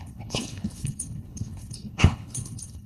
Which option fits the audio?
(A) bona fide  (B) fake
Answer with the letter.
B